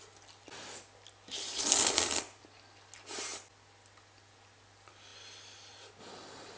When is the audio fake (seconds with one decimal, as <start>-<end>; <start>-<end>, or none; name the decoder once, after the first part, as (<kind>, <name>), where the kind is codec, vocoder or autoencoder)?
none